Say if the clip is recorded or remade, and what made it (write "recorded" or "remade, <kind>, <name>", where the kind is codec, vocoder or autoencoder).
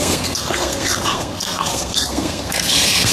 remade, codec, SNAC